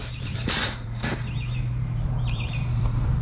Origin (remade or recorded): remade